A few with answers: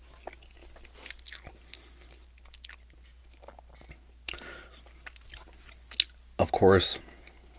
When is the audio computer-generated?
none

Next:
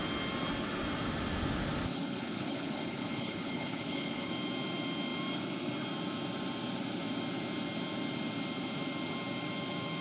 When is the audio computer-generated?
1.9-4.3 (codec, HILCodec)

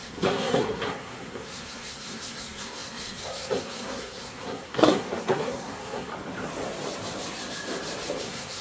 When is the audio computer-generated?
0.0-6.1 (codec, SNAC); 8.2-8.6

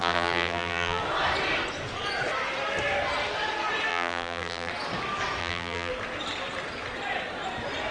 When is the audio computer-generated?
0.0-1.0 (vocoder, BigVGAN v2); 3.9-4.7; 5.4-5.9

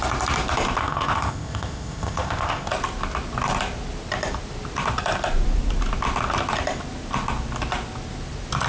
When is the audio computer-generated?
0.8-2.7 (codec, ZipCodec)

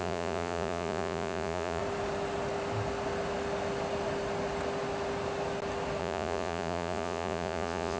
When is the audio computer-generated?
0.0-1.8 (vocoder, Vocos); 6.0-8.0

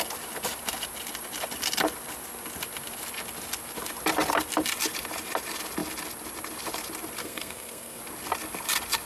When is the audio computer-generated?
7.2-8.0 (codec, SNAC)